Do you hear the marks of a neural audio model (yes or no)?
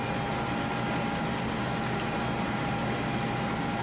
no